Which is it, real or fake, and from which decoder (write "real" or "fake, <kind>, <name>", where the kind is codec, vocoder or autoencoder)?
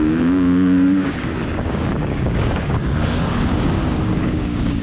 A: fake, codec, DAC